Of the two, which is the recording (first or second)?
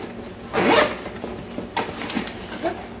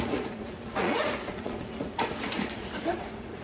first